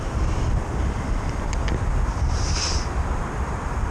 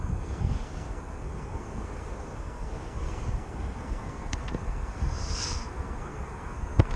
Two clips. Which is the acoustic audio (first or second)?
first